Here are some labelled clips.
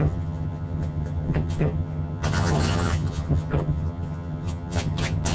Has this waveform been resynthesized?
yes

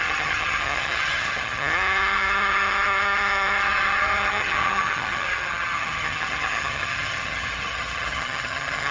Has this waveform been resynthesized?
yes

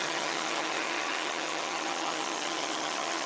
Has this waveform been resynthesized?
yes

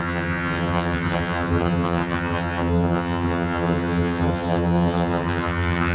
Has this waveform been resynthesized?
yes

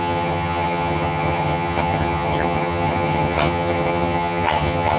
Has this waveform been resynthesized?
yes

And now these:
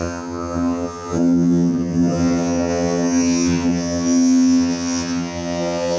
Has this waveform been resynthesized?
yes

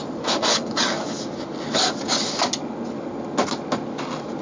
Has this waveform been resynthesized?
no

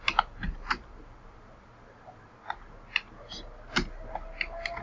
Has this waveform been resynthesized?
no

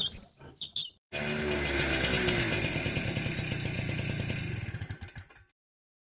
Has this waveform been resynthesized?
no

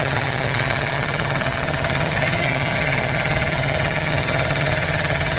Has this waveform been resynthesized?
yes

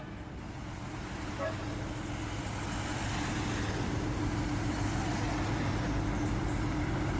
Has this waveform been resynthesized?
no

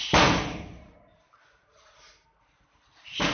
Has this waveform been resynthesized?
no